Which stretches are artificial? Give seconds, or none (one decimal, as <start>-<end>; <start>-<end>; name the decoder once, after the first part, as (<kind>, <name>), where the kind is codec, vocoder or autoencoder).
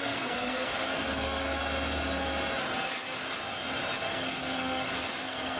0.0-1.6 (codec, SNAC); 4.1-5.6